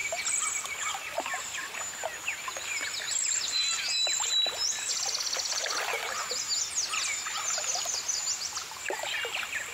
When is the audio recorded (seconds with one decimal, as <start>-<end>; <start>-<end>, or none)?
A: 0.0-9.7